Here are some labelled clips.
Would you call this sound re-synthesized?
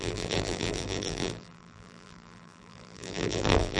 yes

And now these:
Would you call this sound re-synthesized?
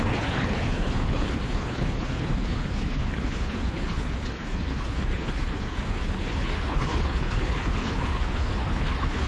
yes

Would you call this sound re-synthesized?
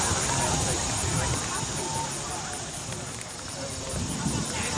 no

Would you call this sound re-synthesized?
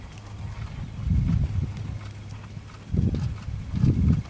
no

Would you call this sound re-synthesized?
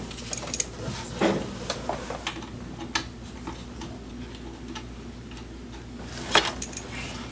no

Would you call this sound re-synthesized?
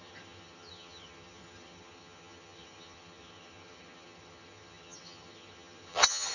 yes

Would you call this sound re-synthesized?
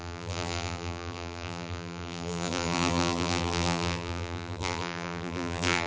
yes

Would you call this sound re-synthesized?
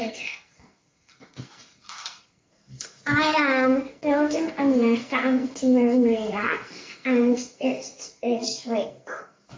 yes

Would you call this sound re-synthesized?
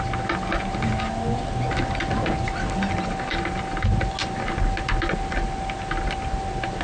no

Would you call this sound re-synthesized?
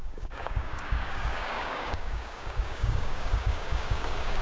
yes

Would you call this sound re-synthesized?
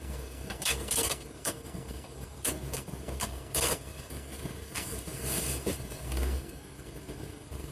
yes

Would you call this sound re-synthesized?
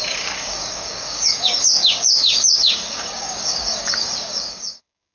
yes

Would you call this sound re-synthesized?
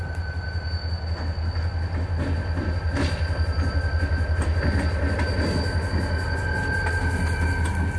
no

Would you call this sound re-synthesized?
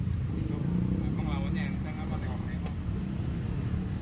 no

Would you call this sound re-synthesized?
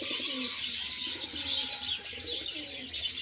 no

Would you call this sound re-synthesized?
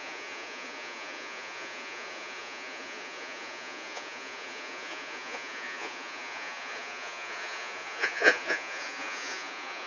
yes